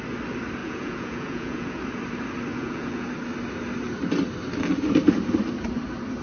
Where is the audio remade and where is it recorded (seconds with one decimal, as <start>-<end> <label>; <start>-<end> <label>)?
0.0-0.6 recorded; 0.6-1.8 remade; 1.8-2.5 recorded; 2.5-3.1 remade; 3.1-6.2 recorded